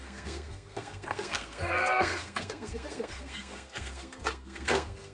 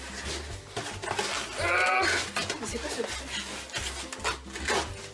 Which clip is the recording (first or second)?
second